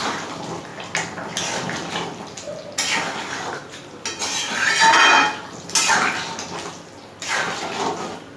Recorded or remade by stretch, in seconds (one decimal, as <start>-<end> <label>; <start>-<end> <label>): 0.0-8.4 recorded